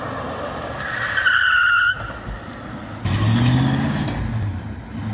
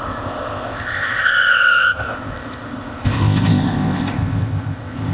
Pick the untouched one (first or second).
first